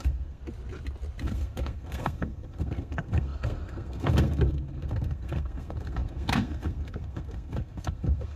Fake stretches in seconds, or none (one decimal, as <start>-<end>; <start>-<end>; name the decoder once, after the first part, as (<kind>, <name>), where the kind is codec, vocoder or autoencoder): 0.0-0.4 (codec, SNAC); 1.2-8.4